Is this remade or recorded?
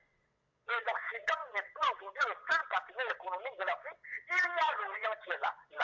remade